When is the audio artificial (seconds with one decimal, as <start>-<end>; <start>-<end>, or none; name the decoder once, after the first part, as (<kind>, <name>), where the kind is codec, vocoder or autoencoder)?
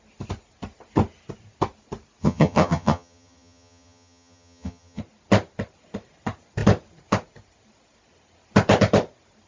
2.2-5.0 (vocoder, HiFi-GAN)